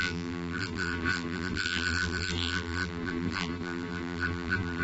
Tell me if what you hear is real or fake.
fake